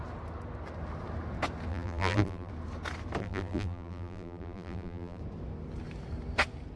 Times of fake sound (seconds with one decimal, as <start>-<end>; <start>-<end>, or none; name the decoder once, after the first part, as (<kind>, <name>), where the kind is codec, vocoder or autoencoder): 1.7-2.5 (vocoder, BigVGAN v2); 3.2-5.2